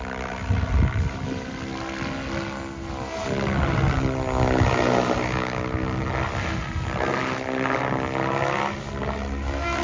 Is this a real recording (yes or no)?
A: yes